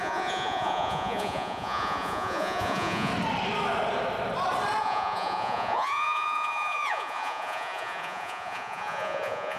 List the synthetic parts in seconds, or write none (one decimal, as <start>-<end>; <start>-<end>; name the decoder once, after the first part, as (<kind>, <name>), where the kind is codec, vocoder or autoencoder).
0.0-3.1 (vocoder, Vocos); 4.8-9.6